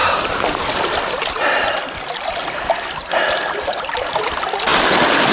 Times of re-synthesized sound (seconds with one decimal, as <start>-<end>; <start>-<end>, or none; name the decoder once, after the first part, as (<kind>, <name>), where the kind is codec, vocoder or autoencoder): none